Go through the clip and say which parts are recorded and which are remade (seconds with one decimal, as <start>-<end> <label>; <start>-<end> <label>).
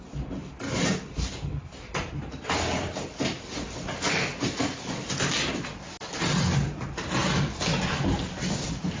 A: 0.0-0.4 recorded; 0.4-5.1 remade; 5.1-7.2 recorded; 7.2-7.7 remade; 7.7-9.0 recorded